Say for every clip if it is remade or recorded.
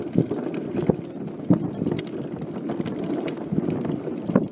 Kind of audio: recorded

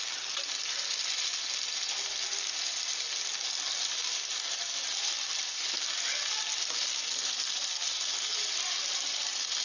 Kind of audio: recorded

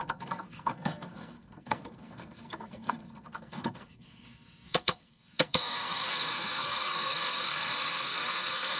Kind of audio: remade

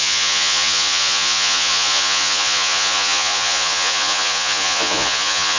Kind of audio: remade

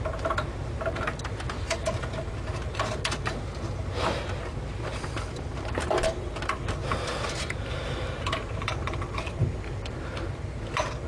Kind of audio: remade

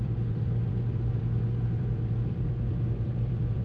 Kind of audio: remade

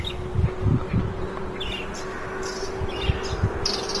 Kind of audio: recorded